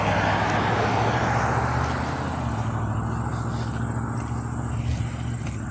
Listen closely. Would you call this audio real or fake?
real